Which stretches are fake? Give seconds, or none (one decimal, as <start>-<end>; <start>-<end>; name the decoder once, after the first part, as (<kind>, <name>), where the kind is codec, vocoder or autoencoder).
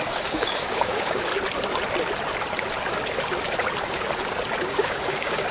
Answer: 0.0-1.3 (codec, DAC); 4.6-5.5